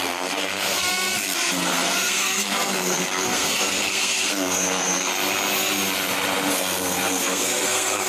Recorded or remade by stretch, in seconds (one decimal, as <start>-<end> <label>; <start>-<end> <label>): 0.0-5.1 remade; 5.1-6.5 recorded; 6.5-8.1 remade